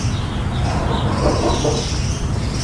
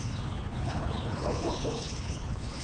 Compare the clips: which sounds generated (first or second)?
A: second